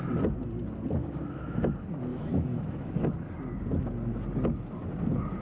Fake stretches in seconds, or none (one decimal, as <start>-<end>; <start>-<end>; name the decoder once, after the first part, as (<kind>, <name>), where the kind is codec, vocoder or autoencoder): 1.0-1.6 (autoencoder, DAC-VAE); 2.1-2.9